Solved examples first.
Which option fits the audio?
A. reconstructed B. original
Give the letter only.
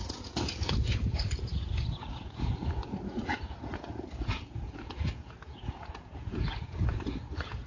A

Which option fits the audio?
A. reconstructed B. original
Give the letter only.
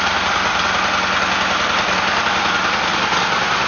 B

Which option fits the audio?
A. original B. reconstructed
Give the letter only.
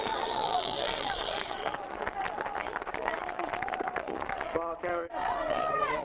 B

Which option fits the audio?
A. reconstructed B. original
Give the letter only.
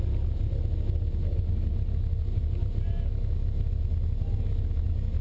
B